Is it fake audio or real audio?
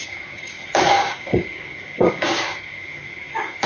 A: fake